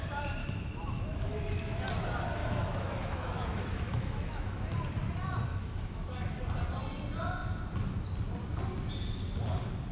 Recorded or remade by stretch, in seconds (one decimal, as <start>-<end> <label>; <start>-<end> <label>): 0.0-0.4 recorded; 0.4-1.8 remade; 1.8-2.4 recorded; 2.4-4.6 remade; 4.6-5.5 recorded; 5.5-6.4 remade; 6.4-9.9 recorded